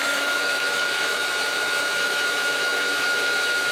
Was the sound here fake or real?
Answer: fake